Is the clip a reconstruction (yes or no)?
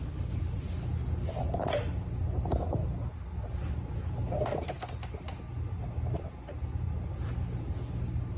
no